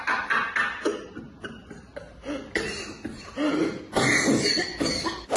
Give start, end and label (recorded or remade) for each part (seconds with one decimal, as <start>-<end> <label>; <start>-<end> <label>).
0.0-5.4 recorded